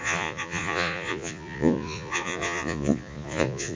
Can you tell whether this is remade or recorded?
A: remade